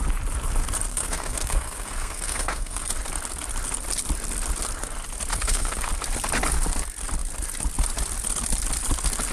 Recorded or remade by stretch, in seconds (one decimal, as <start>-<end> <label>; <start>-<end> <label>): 0.0-0.9 recorded; 0.9-2.9 remade; 2.9-5.3 recorded; 5.3-5.9 remade; 5.9-9.3 recorded